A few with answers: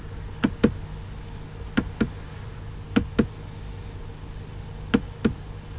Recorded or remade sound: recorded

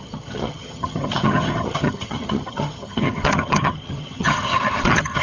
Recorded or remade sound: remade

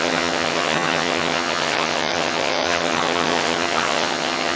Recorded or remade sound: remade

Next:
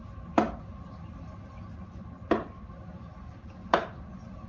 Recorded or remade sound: recorded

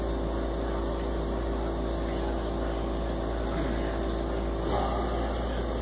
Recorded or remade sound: recorded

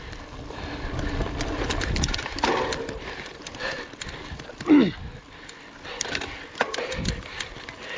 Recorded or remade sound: recorded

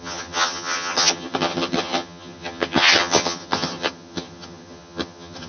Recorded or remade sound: remade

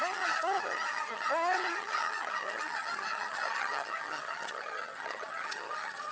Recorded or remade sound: remade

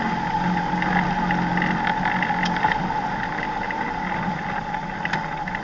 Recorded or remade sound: recorded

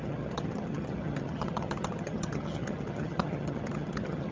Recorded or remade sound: remade